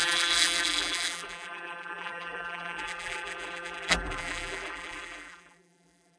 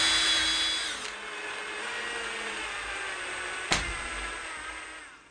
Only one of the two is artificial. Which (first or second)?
first